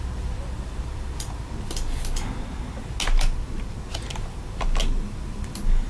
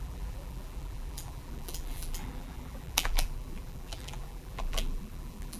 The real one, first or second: first